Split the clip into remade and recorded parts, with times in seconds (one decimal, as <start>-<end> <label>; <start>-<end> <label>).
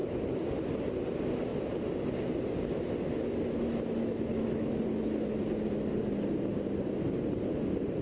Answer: 0.0-4.0 recorded; 4.0-4.8 remade; 4.8-8.0 recorded